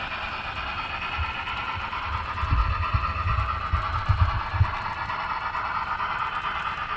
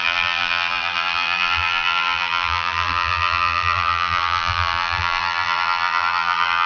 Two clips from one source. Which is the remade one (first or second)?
second